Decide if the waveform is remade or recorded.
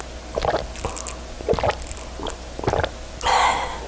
recorded